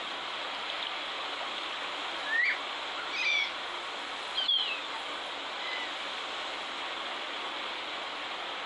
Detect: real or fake fake